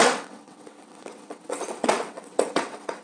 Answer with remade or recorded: remade